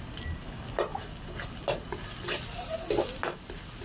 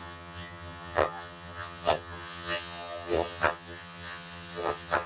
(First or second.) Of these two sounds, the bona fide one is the first